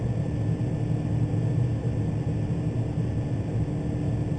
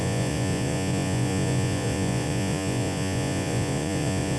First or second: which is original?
first